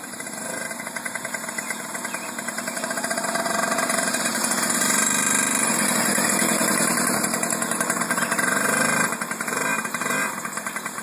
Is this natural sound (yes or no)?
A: no